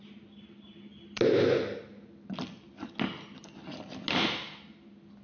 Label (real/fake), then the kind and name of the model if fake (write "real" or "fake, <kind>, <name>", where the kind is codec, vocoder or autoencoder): real